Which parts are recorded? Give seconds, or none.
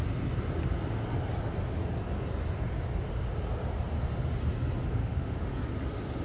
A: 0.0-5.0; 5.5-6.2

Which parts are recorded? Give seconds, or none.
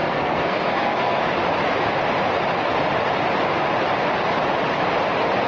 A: 1.2-5.5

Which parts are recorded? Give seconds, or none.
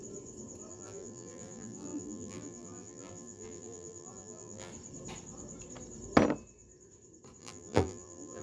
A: 0.0-0.7; 4.7-7.4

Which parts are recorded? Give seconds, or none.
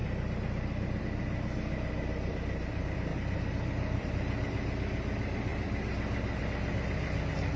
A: none